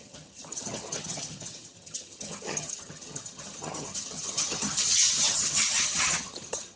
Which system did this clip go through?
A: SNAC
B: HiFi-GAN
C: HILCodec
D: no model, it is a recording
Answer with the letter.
B